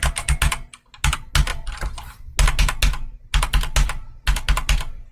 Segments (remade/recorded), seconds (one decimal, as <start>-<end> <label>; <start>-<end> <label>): 0.0-5.1 recorded